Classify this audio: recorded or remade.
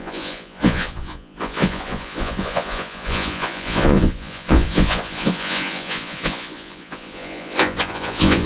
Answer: remade